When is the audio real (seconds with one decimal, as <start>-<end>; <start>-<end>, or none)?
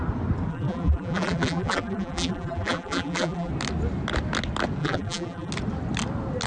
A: 0.0-0.5; 3.5-4.8; 5.5-6.5